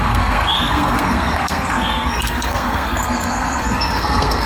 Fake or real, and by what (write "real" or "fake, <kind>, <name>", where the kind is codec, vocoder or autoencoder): fake, codec, SNAC